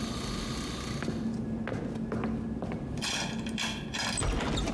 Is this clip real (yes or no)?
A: yes